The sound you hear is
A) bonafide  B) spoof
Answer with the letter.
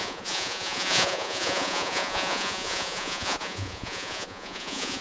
B